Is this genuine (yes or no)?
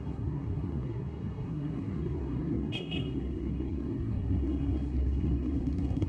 no